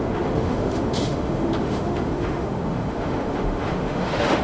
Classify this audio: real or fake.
fake